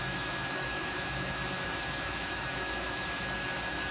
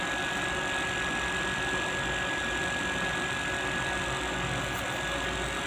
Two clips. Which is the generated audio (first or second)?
first